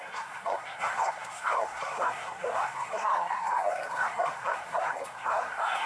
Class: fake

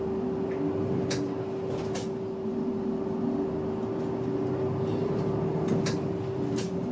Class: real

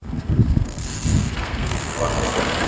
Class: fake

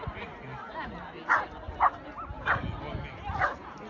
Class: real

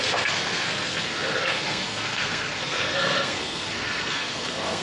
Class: fake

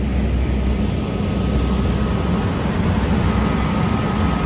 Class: real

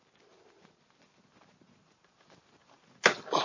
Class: real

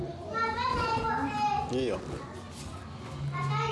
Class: real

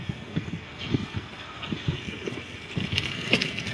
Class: fake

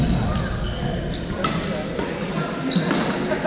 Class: real